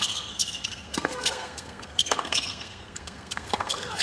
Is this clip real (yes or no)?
no